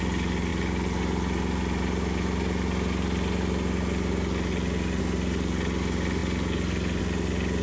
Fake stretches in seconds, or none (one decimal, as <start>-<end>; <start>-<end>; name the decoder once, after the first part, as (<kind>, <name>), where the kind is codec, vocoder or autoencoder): none